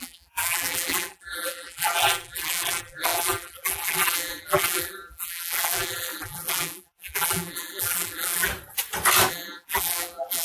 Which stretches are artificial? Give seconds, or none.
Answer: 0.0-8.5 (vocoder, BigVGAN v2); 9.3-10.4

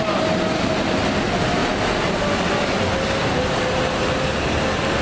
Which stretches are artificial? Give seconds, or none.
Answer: none

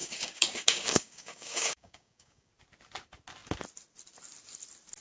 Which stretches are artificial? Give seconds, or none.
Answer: 0.0-2.5 (codec, DAC)

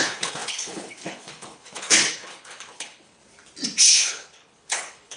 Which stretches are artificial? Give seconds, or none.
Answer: 0.0-3.2 (codec, HILCodec); 3.9-5.2